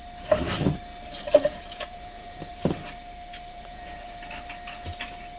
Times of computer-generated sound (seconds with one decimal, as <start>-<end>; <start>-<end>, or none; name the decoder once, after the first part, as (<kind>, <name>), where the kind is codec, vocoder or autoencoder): 1.2-2.5 (vocoder, Vocos); 3.5-4.2